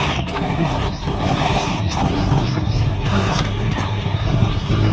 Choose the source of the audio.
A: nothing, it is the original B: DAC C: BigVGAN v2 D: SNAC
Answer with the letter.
D